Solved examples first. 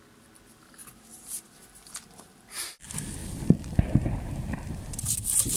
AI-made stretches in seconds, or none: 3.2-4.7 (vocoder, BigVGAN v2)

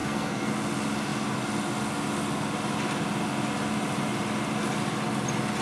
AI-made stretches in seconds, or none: 0.0-0.5 (codec, SNAC)

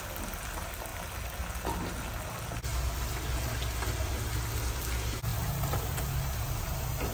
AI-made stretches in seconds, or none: none

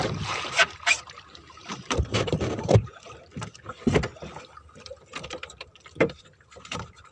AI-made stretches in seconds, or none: 0.0-3.3 (vocoder, BigVGAN v2); 5.6-7.1